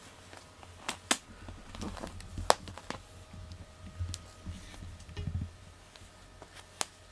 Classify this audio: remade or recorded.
recorded